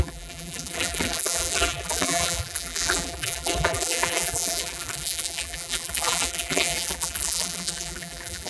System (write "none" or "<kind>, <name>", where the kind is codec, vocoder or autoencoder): vocoder, BigVGAN v2